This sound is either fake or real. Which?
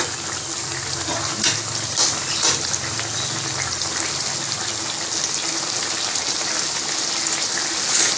real